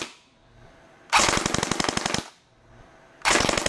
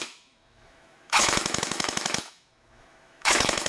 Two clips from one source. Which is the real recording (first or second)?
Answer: first